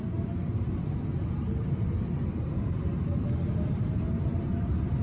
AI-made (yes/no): no